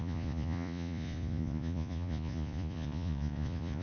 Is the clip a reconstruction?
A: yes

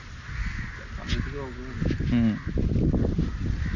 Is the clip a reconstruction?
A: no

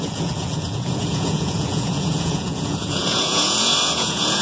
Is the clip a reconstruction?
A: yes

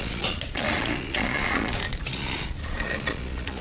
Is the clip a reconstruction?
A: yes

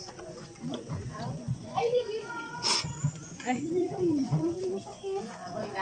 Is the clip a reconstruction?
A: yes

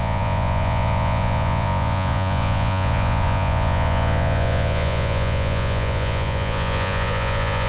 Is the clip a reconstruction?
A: yes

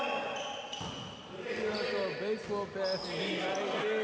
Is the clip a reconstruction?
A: no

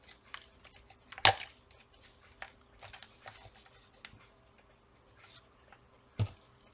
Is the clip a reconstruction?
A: no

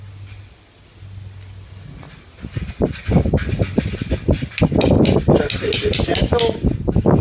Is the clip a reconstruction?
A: no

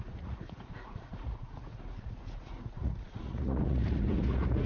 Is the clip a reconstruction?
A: yes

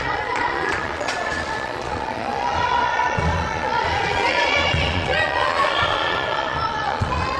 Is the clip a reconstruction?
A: yes